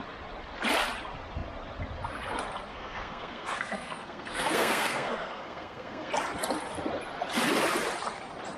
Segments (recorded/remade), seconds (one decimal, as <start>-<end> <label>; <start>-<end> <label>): 0.0-2.7 recorded; 2.7-6.1 remade; 6.1-8.6 recorded